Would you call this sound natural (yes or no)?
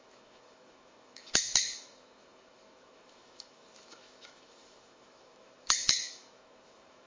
no